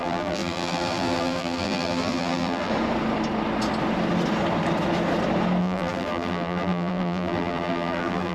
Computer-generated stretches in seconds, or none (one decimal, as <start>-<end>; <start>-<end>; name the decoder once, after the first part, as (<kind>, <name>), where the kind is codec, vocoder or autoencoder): 0.0-2.7 (vocoder, BigVGAN v2); 5.6-8.3